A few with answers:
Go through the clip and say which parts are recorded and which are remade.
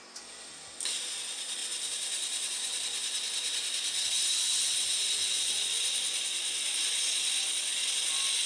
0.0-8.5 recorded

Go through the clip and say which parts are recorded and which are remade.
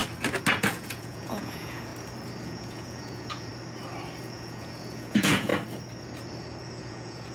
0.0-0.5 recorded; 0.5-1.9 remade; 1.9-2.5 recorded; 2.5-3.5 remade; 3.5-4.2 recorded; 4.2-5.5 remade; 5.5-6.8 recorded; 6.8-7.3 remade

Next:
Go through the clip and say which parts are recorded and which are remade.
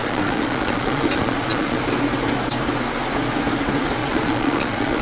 0.0-1.8 remade; 1.8-4.0 recorded; 4.0-5.0 remade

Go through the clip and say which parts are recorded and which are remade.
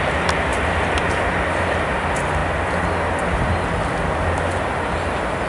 0.0-5.5 recorded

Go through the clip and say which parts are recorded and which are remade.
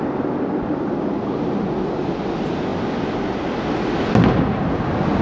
0.0-5.2 recorded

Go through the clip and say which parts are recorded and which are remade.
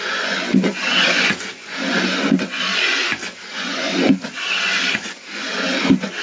0.0-6.2 remade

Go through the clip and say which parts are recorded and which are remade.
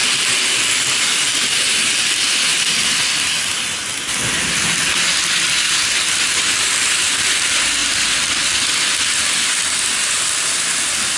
0.0-11.2 recorded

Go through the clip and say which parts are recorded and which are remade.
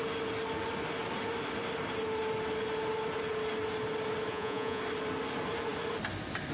0.0-4.3 recorded; 4.3-4.8 remade; 4.8-6.5 recorded